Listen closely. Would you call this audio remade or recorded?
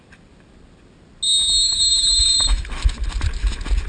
recorded